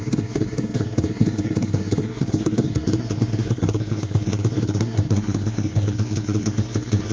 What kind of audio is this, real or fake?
fake